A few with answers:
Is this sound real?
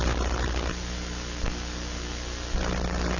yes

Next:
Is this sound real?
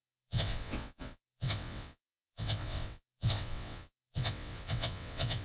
no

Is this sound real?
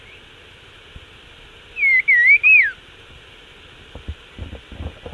yes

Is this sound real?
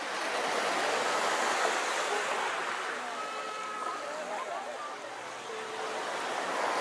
yes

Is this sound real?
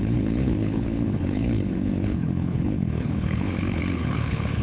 no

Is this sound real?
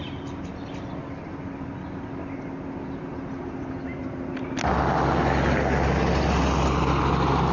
yes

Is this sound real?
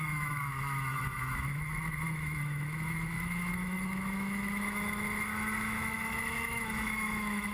no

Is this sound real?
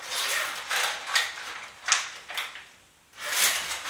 yes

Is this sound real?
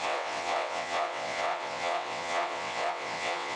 no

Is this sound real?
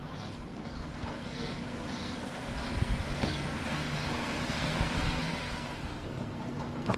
no